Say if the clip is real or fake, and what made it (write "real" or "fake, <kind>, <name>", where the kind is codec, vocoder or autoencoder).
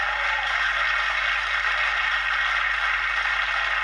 real